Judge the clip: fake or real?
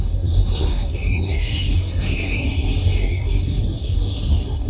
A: fake